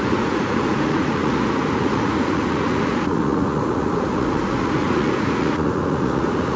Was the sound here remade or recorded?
remade